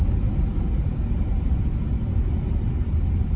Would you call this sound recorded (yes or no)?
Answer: yes